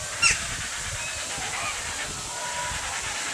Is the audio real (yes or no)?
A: yes